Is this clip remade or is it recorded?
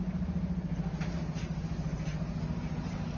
recorded